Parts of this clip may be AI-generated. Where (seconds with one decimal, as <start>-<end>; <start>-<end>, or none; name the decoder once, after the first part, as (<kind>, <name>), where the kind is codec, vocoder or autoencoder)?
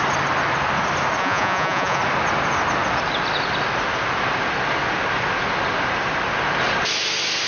1.2-2.0 (vocoder, Vocos)